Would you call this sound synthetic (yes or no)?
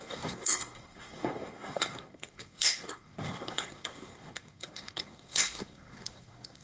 yes